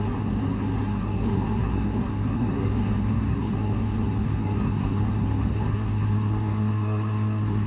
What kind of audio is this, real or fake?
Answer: fake